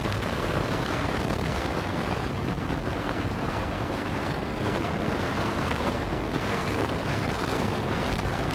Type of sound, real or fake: fake